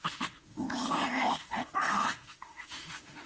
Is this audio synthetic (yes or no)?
yes